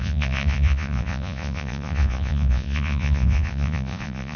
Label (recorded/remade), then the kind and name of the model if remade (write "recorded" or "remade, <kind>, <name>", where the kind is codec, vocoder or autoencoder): remade, vocoder, Vocos